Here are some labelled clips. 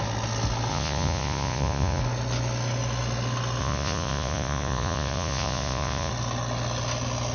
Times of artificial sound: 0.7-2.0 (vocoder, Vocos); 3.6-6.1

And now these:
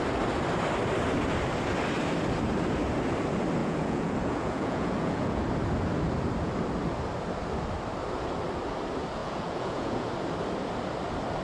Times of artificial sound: 3.6-5.4 (vocoder, Vocos); 9.2-10.1

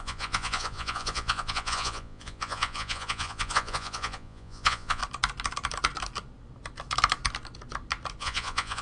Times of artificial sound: 0.0-5.0 (vocoder, Vocos); 8.2-8.8

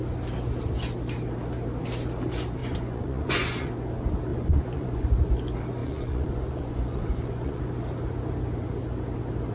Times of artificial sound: 2.6-3.7 (vocoder, Vocos); 4.3-5.1; 5.8-7.6

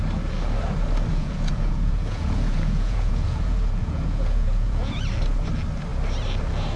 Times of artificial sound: 1.1-5.0 (vocoder, Vocos)